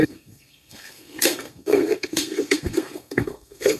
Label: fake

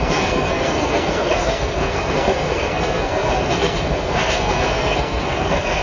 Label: fake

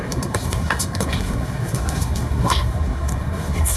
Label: fake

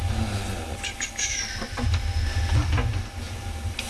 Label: real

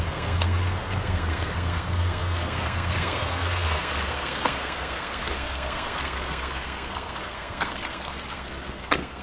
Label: fake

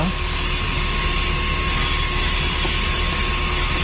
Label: real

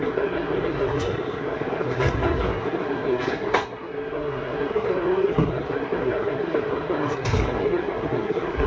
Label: fake